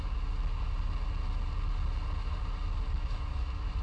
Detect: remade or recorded recorded